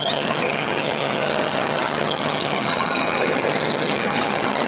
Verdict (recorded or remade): remade